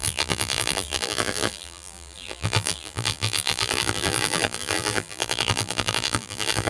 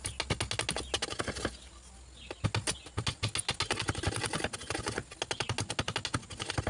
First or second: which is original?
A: second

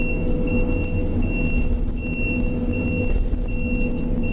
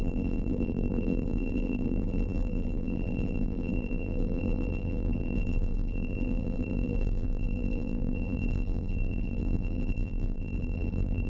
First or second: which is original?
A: first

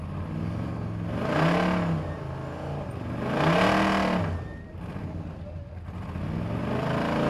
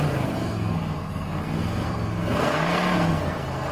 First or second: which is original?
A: first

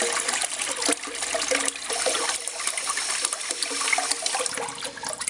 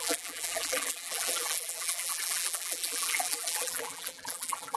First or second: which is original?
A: first